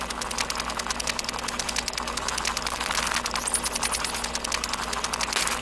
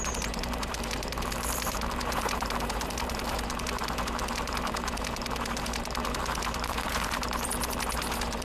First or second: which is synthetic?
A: second